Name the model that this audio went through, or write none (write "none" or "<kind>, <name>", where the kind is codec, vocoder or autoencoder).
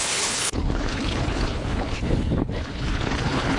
codec, HILCodec